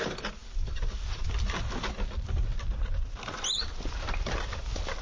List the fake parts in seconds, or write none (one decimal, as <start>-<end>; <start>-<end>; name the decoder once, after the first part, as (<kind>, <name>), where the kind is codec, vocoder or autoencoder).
0.0-2.5 (vocoder, BigVGAN v2); 3.5-5.0